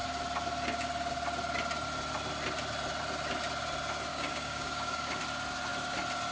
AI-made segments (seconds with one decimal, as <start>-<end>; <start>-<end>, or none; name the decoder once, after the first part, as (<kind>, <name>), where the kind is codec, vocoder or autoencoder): 4.1-5.2 (codec, DAC)